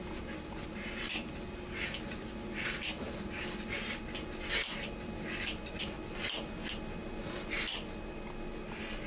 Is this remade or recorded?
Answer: recorded